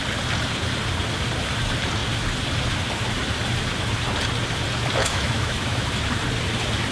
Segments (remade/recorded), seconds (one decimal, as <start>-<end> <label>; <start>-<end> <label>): 0.0-5.0 recorded; 5.0-5.9 remade; 5.9-6.9 recorded